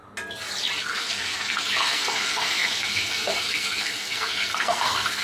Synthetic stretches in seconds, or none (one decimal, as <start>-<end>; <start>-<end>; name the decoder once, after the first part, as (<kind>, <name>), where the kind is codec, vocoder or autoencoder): 0.8-5.2 (codec, SNAC)